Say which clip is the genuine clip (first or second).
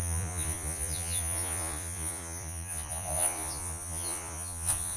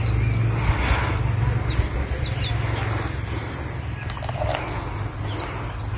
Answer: second